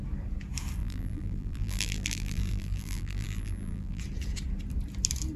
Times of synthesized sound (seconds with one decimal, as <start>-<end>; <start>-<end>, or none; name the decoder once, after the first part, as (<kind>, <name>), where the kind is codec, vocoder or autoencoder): 0.8-4.0 (vocoder, BigVGAN v2)